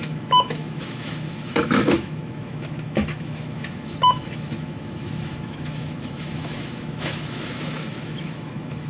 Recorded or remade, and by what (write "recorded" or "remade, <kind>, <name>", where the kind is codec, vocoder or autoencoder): remade, autoencoder, DAC-VAE